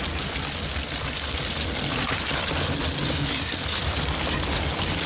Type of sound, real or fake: real